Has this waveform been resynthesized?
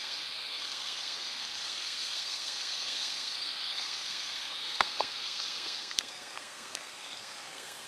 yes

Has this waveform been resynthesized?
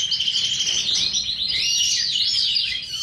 no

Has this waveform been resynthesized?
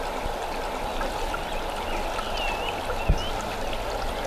no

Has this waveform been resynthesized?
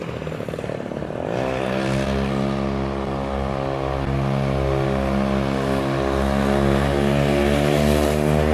no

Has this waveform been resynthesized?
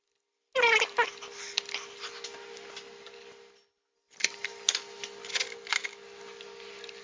no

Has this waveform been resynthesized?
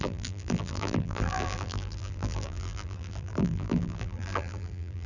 yes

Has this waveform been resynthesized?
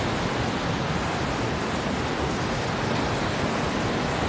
no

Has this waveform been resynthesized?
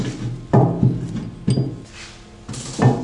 no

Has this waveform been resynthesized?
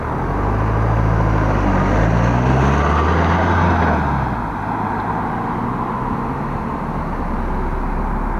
no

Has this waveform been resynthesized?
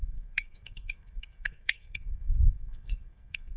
yes